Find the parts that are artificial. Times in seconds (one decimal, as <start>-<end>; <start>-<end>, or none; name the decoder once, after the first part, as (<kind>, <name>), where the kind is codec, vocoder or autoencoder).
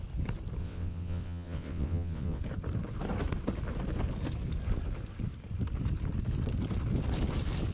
0.6-2.4 (vocoder, WaveNeXt)